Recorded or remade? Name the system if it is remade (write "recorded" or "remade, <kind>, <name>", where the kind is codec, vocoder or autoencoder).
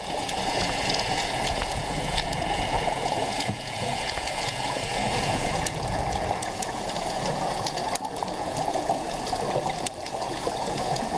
remade, vocoder, Vocos